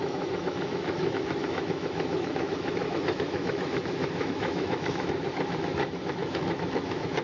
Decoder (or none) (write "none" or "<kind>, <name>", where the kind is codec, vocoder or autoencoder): autoencoder, DAC-VAE